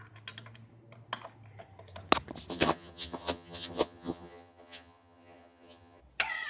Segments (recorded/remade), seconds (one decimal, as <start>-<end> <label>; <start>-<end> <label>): 0.0-2.5 recorded; 2.5-6.0 remade; 6.0-6.5 recorded